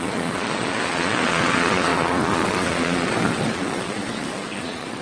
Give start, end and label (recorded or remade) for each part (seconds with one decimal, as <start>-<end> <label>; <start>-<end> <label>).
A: 0.0-5.0 remade